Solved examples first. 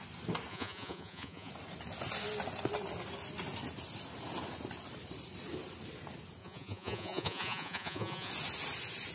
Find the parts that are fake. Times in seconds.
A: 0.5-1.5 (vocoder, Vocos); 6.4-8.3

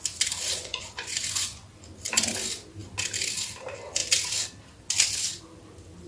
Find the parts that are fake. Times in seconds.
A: 0.6-1.8 (vocoder, Vocos)

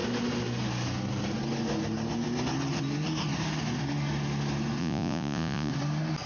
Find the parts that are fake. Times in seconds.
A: 4.8-5.7 (vocoder, Vocos)